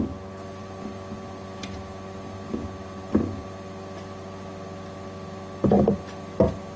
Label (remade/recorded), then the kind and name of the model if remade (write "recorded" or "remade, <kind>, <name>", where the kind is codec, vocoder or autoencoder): recorded